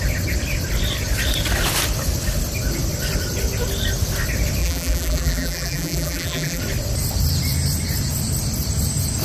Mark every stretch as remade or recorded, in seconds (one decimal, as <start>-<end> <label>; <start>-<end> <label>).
0.0-4.6 recorded; 4.6-6.6 remade; 6.6-9.2 recorded